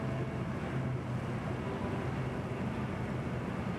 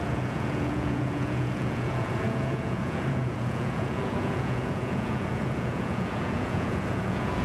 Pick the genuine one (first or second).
first